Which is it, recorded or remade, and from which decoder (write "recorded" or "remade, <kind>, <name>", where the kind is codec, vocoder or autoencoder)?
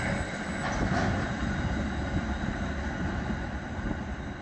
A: recorded